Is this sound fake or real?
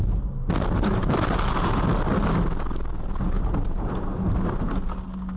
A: real